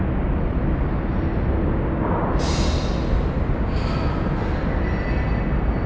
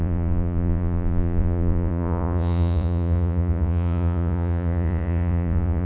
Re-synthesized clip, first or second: second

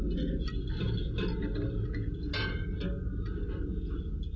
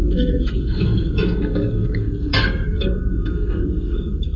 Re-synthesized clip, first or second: second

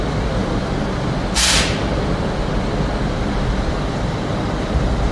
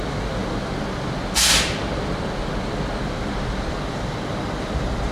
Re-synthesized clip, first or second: first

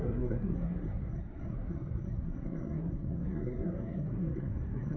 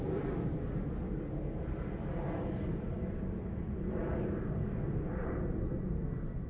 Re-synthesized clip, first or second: first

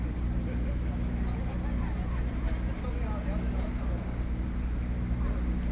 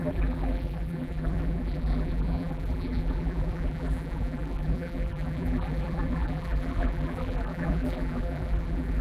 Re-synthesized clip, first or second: second